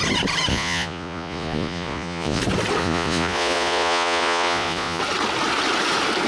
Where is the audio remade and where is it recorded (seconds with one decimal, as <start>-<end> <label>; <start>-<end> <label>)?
0.0-0.5 recorded; 0.5-2.4 remade; 2.4-2.8 recorded; 2.8-5.0 remade; 5.0-6.3 recorded